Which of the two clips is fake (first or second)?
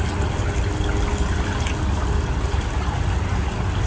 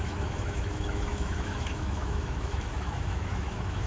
second